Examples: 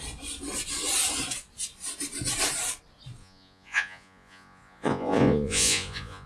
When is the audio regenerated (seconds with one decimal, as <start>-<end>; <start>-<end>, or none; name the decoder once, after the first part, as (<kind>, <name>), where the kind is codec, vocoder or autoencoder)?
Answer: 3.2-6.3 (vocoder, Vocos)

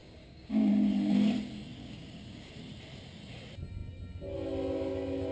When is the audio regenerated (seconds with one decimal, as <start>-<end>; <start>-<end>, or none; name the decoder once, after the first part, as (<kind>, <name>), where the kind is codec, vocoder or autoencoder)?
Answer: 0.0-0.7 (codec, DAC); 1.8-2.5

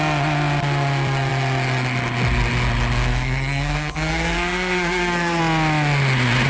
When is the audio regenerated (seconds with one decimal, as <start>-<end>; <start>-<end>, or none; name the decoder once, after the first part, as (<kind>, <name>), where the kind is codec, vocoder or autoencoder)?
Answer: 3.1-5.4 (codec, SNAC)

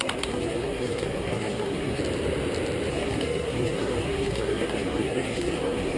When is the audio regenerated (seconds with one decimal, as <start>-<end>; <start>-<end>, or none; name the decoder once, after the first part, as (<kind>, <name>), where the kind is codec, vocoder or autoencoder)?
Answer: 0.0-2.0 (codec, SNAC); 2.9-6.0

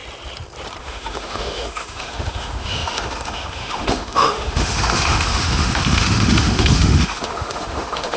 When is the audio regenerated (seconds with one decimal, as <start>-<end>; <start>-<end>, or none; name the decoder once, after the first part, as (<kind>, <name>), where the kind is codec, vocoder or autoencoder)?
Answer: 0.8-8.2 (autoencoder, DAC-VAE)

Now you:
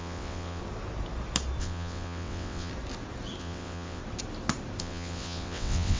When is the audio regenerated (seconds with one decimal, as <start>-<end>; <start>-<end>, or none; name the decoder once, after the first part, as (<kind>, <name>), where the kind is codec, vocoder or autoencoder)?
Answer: 0.0-0.6 (vocoder, WaveNeXt); 1.6-2.7; 3.4-4.0; 4.8-6.0